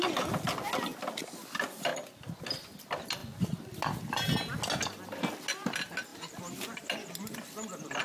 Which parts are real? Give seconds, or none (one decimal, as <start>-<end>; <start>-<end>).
0.0-6.1